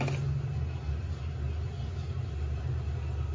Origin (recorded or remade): recorded